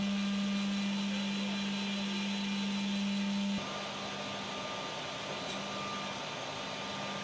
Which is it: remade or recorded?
recorded